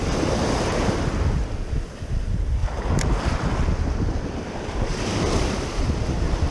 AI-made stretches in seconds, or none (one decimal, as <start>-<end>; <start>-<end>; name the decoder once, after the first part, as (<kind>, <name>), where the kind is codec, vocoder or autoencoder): 0.0-2.6 (vocoder, BigVGAN v2); 4.5-6.5